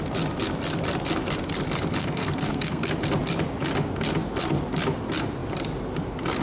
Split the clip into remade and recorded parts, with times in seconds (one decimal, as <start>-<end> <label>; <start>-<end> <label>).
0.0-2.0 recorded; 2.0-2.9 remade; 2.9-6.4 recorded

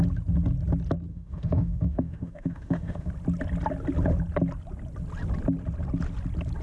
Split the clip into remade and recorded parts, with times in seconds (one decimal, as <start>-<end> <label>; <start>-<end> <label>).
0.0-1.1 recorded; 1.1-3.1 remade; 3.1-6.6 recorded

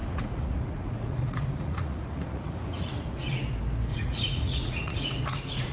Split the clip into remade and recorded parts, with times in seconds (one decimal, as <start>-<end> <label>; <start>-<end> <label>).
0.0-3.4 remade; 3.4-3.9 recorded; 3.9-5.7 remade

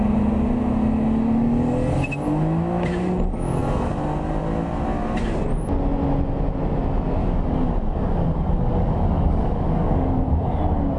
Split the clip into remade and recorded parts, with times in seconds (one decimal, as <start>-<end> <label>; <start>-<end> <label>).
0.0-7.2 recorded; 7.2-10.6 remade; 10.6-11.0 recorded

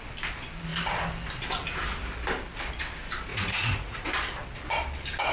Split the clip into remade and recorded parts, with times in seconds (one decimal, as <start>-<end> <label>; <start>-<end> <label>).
0.0-3.3 recorded; 3.3-4.1 remade; 4.1-5.3 recorded